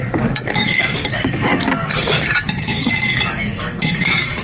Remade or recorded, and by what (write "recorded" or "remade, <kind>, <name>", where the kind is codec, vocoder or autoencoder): remade, codec, DAC